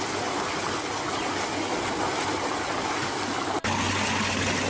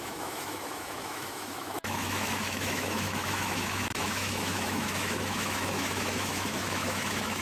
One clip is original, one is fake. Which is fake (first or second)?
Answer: second